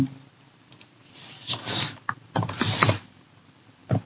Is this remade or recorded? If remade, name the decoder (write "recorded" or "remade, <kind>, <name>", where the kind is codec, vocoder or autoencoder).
recorded